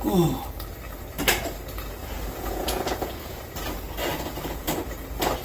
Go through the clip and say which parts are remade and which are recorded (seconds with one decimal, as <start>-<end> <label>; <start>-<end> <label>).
0.0-2.0 recorded; 2.0-3.4 remade; 3.4-4.1 recorded; 4.1-4.8 remade; 4.8-5.4 recorded